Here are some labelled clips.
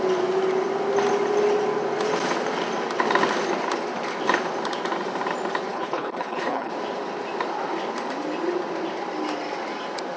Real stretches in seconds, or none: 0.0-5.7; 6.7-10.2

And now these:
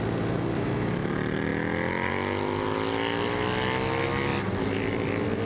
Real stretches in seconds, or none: 0.0-4.3

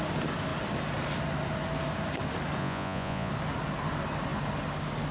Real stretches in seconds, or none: 0.0-2.6; 3.3-5.1

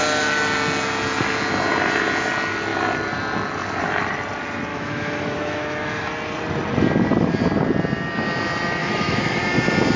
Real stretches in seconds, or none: 0.0-4.7; 6.1-8.8; 9.4-10.0

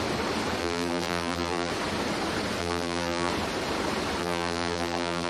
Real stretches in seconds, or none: 0.0-0.6; 1.7-2.6; 3.3-4.2

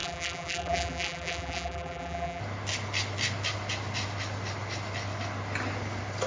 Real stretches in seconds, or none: 2.4-6.3